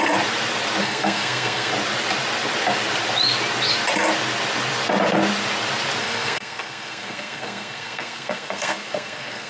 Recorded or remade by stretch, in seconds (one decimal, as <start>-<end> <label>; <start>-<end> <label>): 0.0-0.8 recorded; 0.8-1.7 remade; 1.7-6.0 recorded; 6.0-9.5 remade